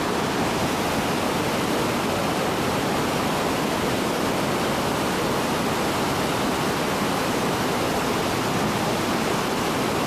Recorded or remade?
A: recorded